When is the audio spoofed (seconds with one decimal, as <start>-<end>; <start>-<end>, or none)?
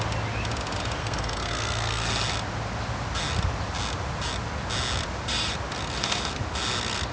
1.0-2.1